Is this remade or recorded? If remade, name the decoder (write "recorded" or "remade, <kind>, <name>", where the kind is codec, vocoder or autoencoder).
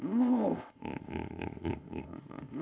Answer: remade, codec, ZipCodec